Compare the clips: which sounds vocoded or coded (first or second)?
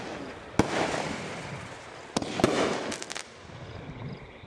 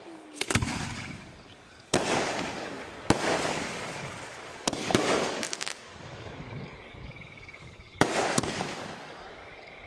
second